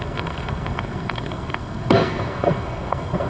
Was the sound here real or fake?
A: fake